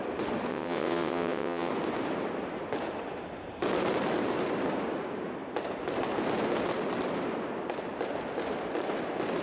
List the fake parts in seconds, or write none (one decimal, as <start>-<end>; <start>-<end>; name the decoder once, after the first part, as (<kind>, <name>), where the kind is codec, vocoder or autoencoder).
0.5-1.7 (vocoder, WaveNeXt)